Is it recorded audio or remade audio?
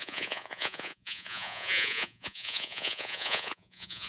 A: remade